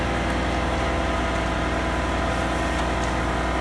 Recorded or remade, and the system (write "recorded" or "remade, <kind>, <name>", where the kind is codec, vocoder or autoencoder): recorded